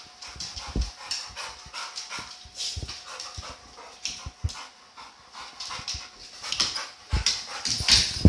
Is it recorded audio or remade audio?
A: recorded